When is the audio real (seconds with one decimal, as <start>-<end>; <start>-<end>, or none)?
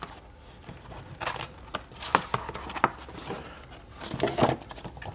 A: 0.0-5.1